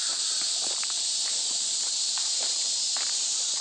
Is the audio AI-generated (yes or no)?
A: yes